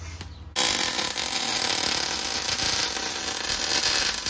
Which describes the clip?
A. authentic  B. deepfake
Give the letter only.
A